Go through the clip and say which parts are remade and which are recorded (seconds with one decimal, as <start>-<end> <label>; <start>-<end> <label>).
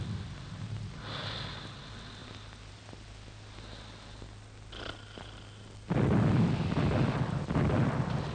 0.0-8.3 recorded